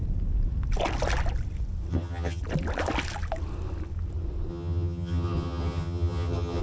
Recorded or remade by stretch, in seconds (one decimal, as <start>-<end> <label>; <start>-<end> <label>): 0.0-1.9 recorded; 1.9-2.4 remade; 2.4-4.5 recorded; 4.5-6.6 remade